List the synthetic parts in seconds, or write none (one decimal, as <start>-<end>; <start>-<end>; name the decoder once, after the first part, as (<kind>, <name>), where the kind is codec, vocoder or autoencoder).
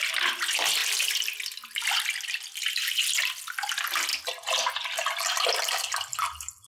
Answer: 4.1-5.2 (vocoder, BigVGAN v2)